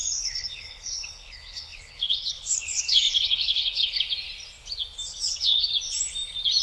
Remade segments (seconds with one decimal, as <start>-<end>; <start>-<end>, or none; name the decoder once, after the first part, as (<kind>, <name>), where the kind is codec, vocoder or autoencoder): 0.0-4.0 (codec, HILCodec); 5.1-5.7